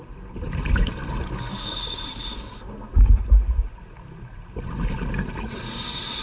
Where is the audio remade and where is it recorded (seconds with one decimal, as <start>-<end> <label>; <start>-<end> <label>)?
0.0-6.2 recorded